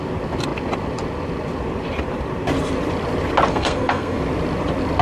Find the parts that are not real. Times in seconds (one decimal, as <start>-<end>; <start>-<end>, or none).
3.5-4.2